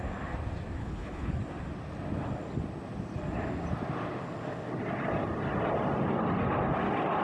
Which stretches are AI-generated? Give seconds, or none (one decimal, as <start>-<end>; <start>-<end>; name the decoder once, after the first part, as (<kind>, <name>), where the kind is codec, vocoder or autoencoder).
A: 0.8-1.3 (codec, HILCodec)

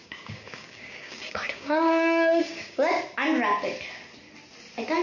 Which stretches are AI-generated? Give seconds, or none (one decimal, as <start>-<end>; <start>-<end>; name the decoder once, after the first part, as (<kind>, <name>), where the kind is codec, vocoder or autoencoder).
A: 0.0-2.9 (codec, DAC)

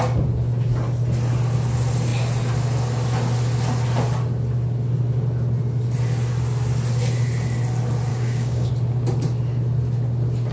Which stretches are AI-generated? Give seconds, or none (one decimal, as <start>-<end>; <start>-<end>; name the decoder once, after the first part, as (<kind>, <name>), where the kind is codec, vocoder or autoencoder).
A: 8.1-8.7 (codec, DAC)

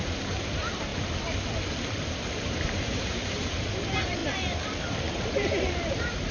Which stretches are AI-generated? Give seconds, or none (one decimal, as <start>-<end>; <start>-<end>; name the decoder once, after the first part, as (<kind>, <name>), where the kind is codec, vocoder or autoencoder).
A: 0.0-0.9 (vocoder, BigVGAN v2); 2.2-4.2; 5.1-6.3

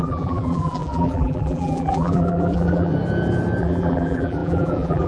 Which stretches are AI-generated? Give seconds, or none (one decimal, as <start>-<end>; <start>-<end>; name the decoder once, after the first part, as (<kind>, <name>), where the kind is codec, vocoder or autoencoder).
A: 0.0-2.9 (vocoder, BigVGAN v2); 3.6-5.1

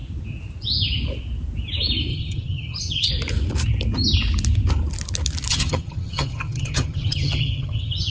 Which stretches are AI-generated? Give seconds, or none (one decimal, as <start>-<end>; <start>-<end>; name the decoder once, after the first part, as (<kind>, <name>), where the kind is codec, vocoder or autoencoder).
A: 2.1-3.1 (vocoder, HiFi-GAN); 5.5-8.1